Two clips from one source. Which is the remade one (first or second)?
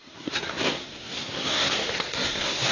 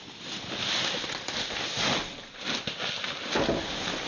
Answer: first